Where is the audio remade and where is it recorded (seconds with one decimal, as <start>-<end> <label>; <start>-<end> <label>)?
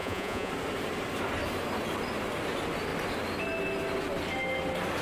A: 0.0-0.5 remade; 0.5-5.0 recorded